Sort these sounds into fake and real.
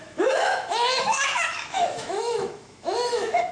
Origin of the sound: fake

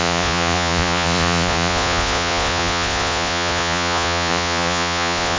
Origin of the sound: fake